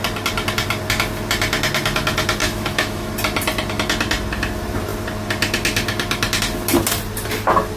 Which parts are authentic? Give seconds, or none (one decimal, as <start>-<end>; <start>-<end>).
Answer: 0.0-2.4; 3.1-7.8